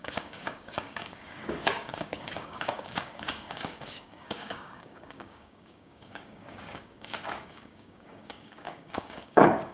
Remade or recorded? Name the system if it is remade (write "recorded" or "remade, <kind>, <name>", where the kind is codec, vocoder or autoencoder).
remade, codec, DAC